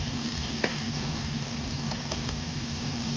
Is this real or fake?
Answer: fake